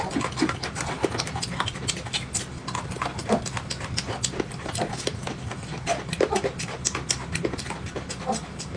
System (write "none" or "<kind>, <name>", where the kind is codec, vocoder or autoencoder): none